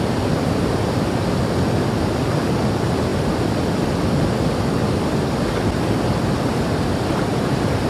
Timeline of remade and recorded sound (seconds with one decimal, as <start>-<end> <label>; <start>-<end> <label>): 0.0-7.9 recorded